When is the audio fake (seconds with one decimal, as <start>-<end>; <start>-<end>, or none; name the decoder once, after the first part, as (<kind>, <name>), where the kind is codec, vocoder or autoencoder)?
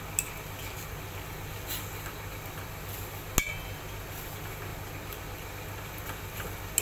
none